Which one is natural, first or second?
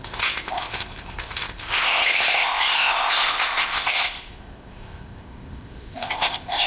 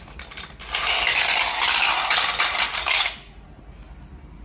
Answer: second